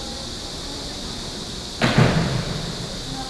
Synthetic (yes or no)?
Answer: no